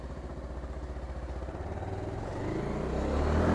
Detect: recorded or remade recorded